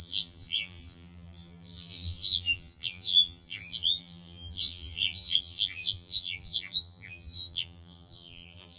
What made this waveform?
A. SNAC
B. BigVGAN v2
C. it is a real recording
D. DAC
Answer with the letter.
B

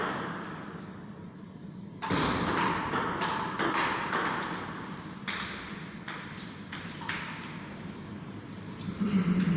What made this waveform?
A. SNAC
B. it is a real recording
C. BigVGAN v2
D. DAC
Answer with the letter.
C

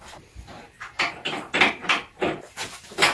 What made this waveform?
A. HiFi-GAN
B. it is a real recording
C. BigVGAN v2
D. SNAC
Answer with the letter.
C